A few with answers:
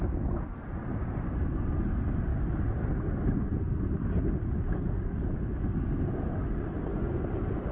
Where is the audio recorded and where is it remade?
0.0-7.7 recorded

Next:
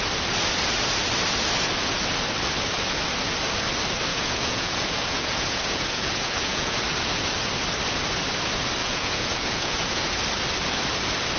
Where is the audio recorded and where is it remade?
0.0-4.1 recorded; 4.1-6.8 remade; 6.8-8.8 recorded; 8.8-10.1 remade; 10.1-11.4 recorded